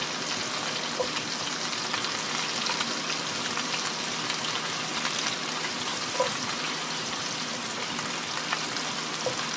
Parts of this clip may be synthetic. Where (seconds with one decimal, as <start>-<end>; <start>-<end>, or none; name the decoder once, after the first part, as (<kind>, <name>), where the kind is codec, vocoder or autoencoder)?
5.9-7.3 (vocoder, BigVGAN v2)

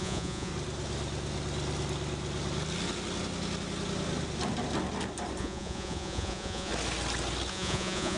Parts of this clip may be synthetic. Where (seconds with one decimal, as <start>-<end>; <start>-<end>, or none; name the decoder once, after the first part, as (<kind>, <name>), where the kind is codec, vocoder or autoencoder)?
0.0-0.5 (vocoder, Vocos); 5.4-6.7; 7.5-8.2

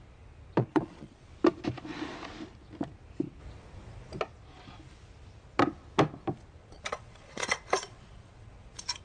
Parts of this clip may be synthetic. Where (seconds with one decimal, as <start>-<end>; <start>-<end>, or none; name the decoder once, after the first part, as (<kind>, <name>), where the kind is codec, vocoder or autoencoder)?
0.6-1.3 (vocoder, Vocos); 6.6-9.0

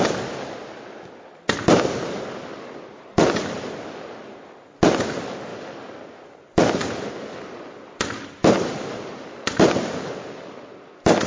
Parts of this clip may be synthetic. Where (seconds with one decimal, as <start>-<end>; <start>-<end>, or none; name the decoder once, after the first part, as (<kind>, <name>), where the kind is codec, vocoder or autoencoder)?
2.5-3.9 (vocoder, BigVGAN v2); 5.5-10.6

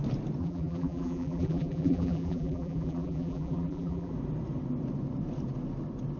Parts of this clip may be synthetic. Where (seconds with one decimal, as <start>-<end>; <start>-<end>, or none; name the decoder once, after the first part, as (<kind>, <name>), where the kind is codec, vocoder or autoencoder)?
0.4-4.1 (vocoder, BigVGAN v2)